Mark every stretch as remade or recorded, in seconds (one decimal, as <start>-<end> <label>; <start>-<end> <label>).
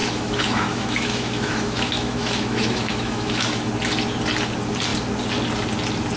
0.0-3.7 remade; 3.7-6.2 recorded